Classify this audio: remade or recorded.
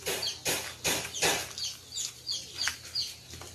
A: recorded